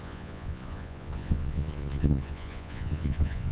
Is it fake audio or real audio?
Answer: fake